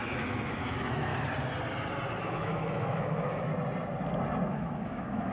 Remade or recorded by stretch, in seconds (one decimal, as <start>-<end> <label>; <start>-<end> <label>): 0.0-1.1 remade; 1.1-2.2 recorded; 2.2-3.5 remade; 3.5-4.5 recorded; 4.5-5.3 remade